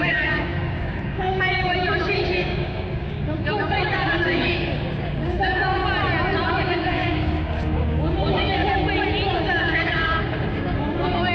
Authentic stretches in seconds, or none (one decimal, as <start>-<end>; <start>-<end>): 5.8-6.5; 8.6-9.6